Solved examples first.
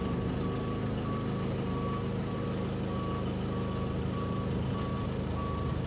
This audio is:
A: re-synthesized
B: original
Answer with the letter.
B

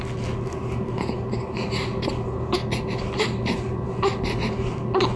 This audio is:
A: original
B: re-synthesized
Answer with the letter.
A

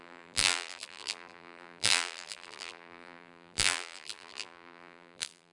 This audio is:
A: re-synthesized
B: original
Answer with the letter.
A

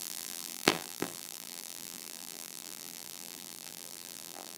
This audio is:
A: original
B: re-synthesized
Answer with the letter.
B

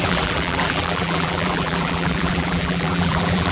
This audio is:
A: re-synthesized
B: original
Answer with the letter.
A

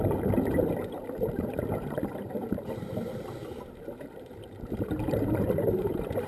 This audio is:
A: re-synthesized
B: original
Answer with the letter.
A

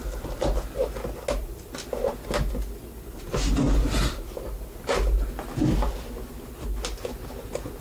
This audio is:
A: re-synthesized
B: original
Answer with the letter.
B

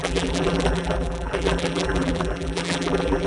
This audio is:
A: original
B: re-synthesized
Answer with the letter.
B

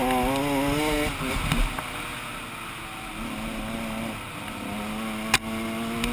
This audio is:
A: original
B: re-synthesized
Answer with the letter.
A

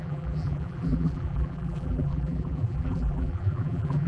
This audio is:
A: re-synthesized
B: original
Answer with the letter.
A